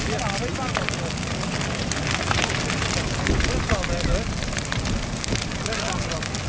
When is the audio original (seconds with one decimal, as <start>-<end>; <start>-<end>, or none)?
0.0-6.5